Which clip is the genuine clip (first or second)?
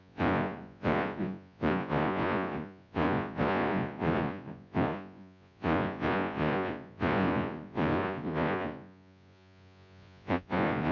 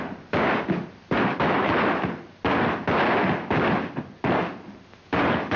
second